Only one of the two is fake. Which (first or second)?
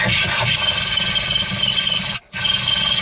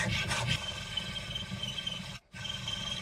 second